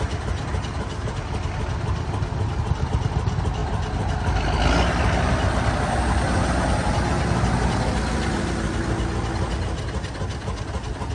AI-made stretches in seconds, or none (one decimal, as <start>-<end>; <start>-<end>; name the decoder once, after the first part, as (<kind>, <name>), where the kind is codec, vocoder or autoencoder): none